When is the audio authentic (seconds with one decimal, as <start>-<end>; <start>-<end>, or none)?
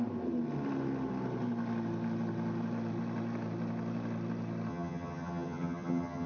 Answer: 0.0-4.7